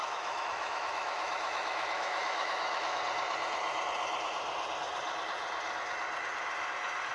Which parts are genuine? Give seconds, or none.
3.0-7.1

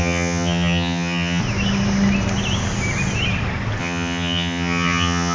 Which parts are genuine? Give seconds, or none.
1.4-3.8